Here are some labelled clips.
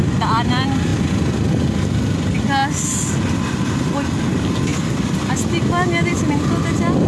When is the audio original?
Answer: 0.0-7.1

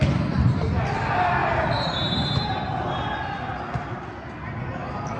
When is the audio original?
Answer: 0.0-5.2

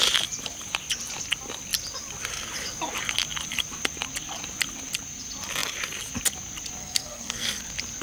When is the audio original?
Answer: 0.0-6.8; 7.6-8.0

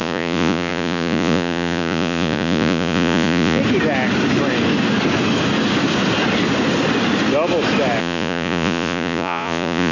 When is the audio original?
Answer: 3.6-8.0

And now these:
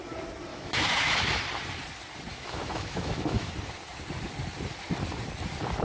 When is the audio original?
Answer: 0.0-0.5; 1.4-2.3; 3.5-5.8

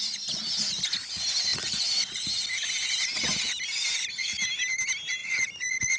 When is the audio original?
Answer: 0.0-5.2

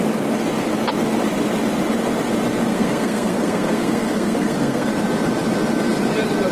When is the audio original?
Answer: 0.0-2.7; 4.9-6.5